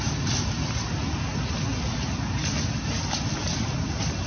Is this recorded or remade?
recorded